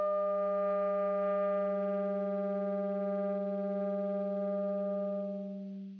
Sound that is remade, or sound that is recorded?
recorded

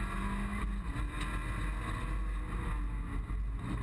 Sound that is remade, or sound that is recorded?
recorded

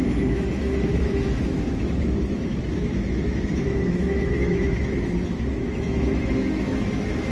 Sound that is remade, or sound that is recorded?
remade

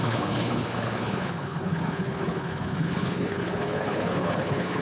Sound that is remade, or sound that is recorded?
remade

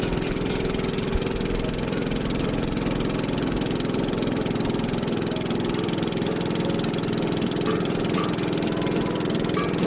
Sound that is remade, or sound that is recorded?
recorded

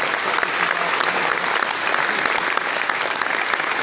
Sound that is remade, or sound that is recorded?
recorded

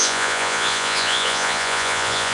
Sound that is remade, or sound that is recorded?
remade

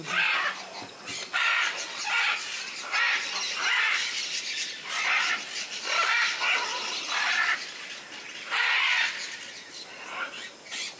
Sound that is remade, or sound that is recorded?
recorded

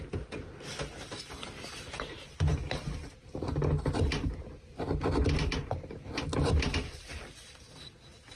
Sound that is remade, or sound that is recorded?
recorded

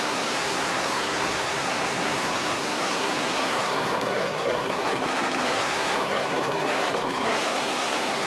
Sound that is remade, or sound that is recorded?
remade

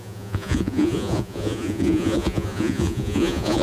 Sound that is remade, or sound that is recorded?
remade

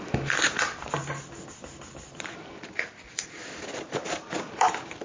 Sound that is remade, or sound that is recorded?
recorded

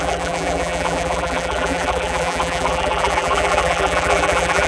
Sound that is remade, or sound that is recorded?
remade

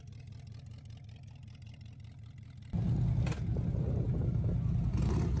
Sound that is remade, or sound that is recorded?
recorded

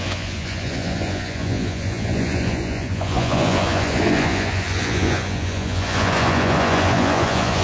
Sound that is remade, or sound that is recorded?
remade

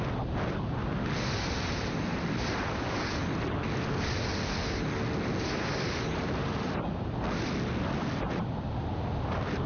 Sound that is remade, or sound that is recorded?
recorded